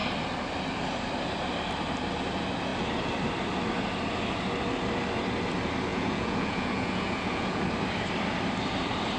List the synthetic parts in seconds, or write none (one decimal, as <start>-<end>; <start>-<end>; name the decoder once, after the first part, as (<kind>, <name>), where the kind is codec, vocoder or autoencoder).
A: 5.9-7.6 (vocoder, Vocos)